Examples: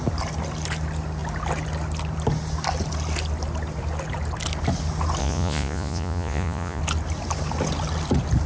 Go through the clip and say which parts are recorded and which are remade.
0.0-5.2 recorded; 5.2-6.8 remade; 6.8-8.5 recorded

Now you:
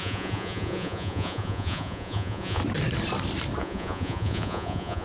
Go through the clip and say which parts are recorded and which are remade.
0.0-2.6 remade; 2.6-3.6 recorded; 3.6-5.0 remade